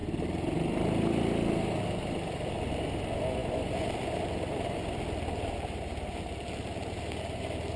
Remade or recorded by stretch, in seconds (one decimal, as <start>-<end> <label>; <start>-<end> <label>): 0.0-2.5 remade; 2.5-7.8 recorded